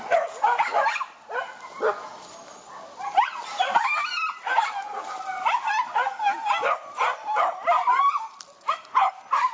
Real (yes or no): yes